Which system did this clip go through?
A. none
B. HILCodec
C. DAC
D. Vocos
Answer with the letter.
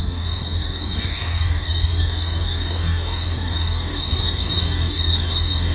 C